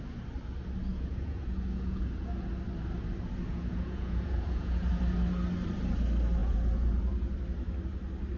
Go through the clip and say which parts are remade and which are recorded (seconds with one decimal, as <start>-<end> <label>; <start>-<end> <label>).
0.0-0.9 recorded; 0.9-2.5 remade; 2.5-3.5 recorded; 3.5-5.0 remade; 5.0-6.4 recorded; 6.4-6.9 remade; 6.9-8.4 recorded